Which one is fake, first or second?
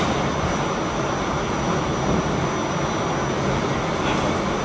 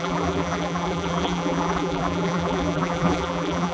second